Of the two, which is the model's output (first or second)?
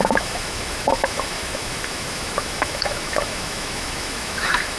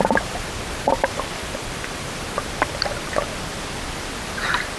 first